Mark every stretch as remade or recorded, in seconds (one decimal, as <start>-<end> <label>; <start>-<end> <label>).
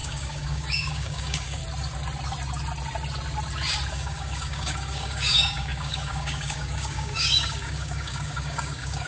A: 0.0-1.6 remade; 1.6-3.9 recorded; 3.9-9.1 remade